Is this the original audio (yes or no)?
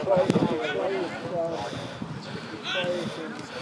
yes